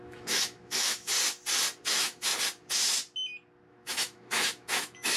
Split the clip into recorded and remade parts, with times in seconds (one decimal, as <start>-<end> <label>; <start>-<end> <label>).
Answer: 0.0-1.1 remade; 1.1-1.8 recorded; 1.8-2.3 remade; 2.3-3.7 recorded; 3.7-5.2 remade